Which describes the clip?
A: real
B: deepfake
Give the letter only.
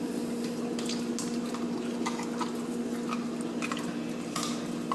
A